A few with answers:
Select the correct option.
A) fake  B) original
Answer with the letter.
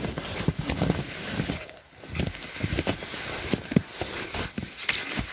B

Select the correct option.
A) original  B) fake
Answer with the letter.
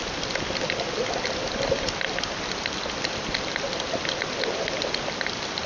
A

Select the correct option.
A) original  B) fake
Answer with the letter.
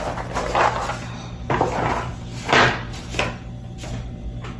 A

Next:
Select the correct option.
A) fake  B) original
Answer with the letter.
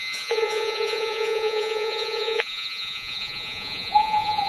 A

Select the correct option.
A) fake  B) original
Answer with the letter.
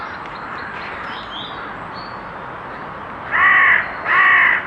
B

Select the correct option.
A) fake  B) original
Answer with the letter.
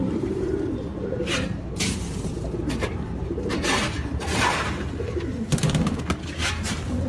A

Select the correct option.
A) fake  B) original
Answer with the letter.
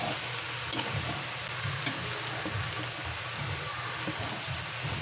B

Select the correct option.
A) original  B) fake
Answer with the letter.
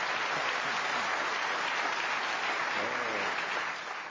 A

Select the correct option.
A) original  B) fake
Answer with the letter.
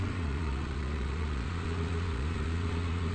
B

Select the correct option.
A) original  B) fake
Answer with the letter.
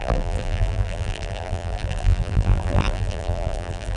B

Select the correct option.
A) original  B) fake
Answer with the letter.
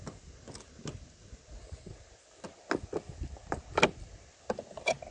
A